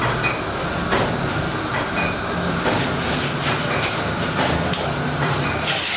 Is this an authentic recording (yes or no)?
no